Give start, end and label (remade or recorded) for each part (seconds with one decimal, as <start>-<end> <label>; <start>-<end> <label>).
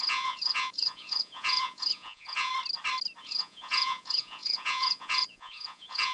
0.0-2.5 remade; 2.5-3.2 recorded; 3.2-6.1 remade